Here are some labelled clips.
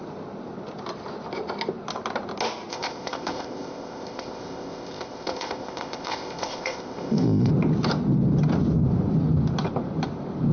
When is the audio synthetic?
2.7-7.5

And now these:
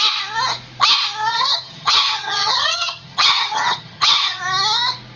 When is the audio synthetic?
1.3-4.4

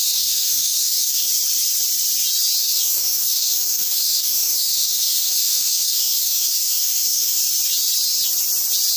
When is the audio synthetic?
0.0-1.3; 2.6-7.4

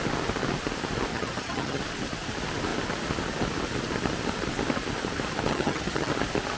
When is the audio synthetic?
1.1-1.8; 5.5-6.1

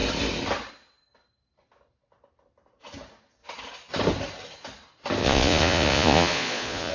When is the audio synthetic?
5.2-6.9